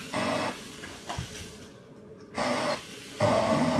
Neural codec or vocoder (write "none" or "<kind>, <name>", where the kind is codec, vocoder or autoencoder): vocoder, Vocos